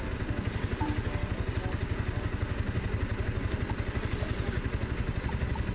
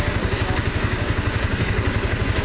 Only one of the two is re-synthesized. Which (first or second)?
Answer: second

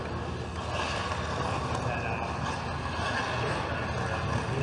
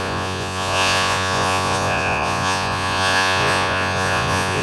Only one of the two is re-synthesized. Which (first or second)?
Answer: second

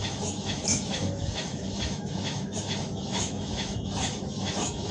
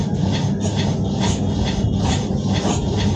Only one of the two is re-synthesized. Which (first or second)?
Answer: first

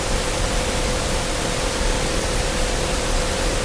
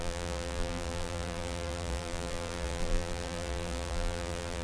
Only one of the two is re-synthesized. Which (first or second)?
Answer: second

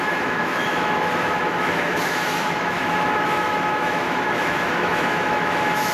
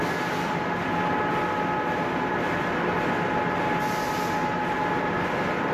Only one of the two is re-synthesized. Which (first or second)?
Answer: first